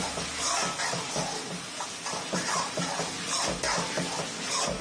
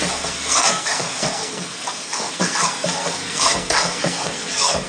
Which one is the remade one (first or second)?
second